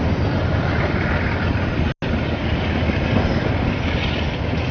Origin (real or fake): real